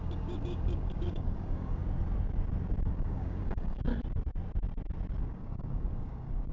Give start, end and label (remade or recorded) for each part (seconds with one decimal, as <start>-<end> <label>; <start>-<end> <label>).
0.0-1.8 remade; 1.8-2.9 recorded; 2.9-3.9 remade; 3.9-5.2 recorded; 5.2-6.5 remade